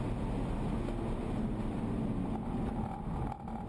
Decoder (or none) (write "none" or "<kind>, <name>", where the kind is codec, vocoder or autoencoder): none